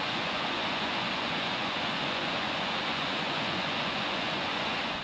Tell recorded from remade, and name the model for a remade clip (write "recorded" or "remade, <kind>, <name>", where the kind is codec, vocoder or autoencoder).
remade, vocoder, Vocos